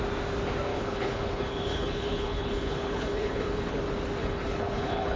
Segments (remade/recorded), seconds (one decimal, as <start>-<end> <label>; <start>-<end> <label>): 0.0-0.7 recorded; 0.7-3.8 remade; 3.8-4.2 recorded; 4.2-5.2 remade

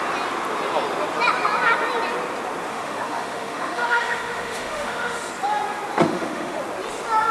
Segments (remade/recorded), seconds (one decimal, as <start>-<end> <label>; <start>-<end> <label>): 0.0-2.7 recorded; 2.7-5.3 remade; 5.3-6.1 recorded; 6.1-6.6 remade; 6.6-7.3 recorded

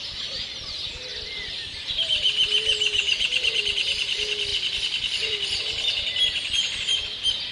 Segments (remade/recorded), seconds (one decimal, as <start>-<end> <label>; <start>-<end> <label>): 0.0-1.1 recorded; 1.1-2.9 remade; 2.9-4.5 recorded; 4.5-5.6 remade; 5.6-7.5 recorded